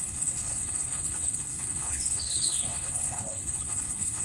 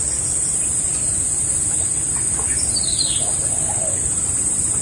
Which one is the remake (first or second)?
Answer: first